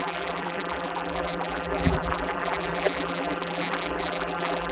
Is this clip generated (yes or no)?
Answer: yes